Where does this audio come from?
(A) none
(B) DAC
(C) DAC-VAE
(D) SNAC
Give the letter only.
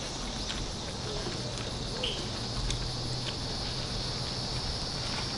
A